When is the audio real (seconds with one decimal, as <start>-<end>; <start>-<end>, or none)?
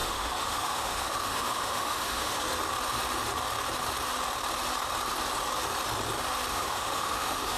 2.4-6.5